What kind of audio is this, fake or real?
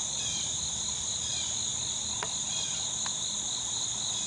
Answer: real